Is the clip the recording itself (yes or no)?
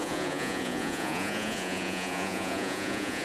no